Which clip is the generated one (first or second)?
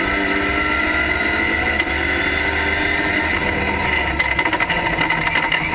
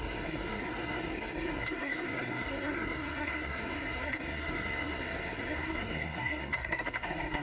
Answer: second